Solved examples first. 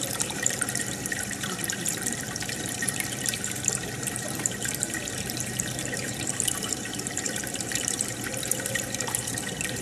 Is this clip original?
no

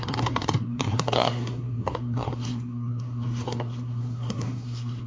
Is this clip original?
no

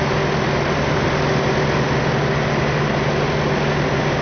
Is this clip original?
yes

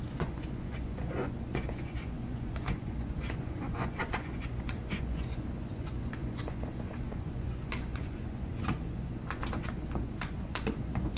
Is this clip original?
no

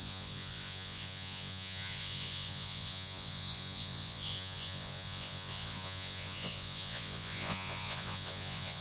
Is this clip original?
no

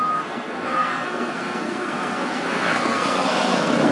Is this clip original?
no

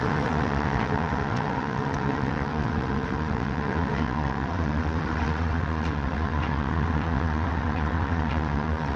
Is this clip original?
no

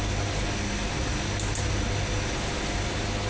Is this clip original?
yes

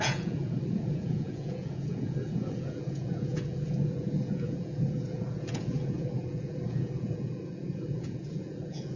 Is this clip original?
no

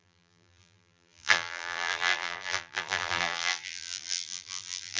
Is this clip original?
no